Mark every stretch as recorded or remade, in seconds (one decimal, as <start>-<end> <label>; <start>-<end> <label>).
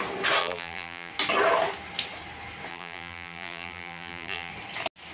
0.0-0.4 recorded; 0.4-1.1 remade; 1.1-2.7 recorded; 2.7-4.5 remade; 4.5-5.1 recorded